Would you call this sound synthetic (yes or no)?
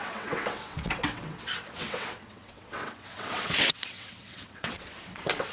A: yes